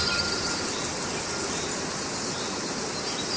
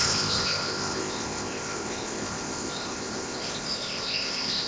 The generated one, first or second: second